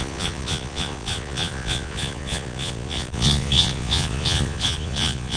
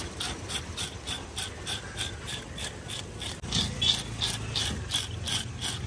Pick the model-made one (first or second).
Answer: first